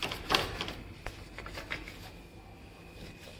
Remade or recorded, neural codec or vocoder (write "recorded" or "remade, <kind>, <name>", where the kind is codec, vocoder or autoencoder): recorded